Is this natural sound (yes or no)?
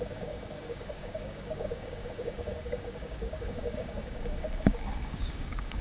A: no